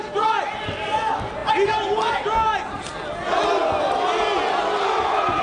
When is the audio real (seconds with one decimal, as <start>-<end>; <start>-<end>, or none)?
0.0-5.4